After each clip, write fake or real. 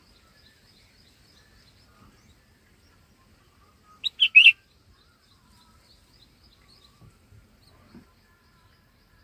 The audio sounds real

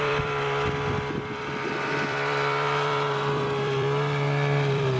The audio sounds fake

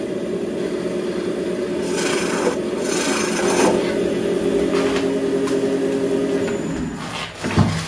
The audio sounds real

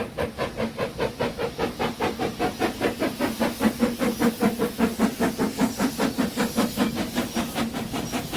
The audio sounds real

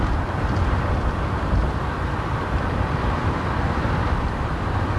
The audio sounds fake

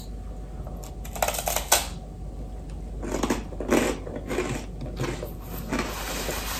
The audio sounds real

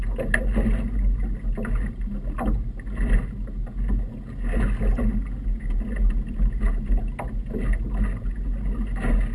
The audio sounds real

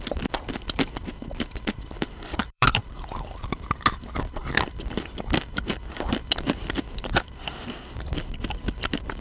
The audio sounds fake